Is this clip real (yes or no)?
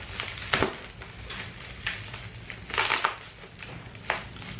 yes